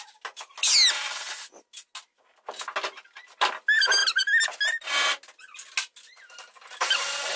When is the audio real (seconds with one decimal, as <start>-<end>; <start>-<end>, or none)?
0.0-7.4